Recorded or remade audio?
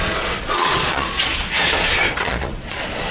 remade